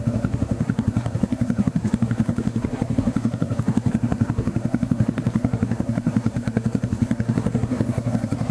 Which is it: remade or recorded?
remade